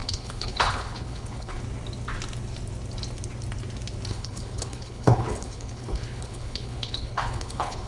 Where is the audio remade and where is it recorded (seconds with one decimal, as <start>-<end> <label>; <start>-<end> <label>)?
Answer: 0.0-1.6 remade; 1.6-4.1 recorded; 4.1-7.9 remade